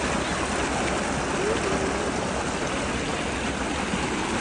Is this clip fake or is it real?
real